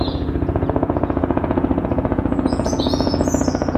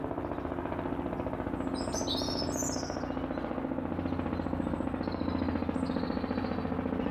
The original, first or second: second